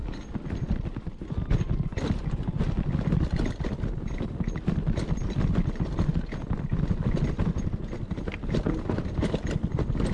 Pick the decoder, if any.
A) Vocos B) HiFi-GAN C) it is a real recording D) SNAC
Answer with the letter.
C